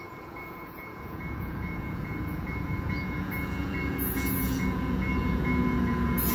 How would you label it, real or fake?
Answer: fake